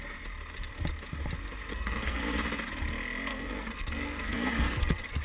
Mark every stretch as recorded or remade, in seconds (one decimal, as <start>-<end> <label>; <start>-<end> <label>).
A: 0.0-1.7 recorded; 1.7-2.2 remade; 2.2-3.3 recorded; 3.3-5.2 remade